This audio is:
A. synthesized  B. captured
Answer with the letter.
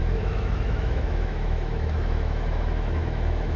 A